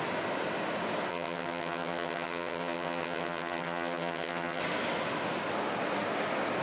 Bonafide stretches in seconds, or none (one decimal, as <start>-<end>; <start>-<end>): 0.0-1.1; 4.6-6.6